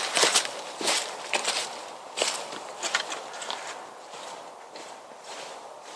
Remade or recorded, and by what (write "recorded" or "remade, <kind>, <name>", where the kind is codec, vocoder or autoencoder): remade, vocoder, BigVGAN v2